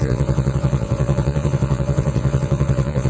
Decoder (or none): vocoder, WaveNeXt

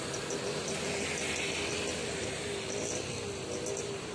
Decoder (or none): none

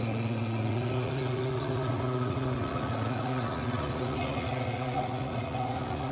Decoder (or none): vocoder, Vocos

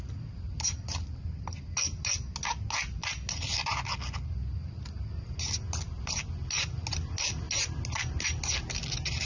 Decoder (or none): none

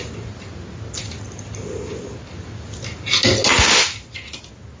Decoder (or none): none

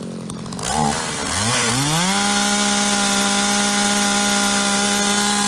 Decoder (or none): none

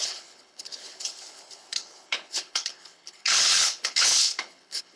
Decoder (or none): codec, HILCodec